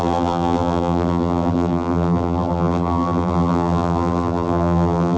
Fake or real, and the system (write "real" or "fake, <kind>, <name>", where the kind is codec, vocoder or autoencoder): fake, vocoder, BigVGAN v2